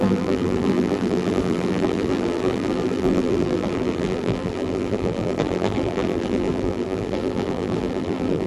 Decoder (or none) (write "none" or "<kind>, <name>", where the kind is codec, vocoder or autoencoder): vocoder, BigVGAN v2